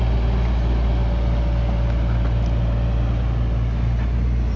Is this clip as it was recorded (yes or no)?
yes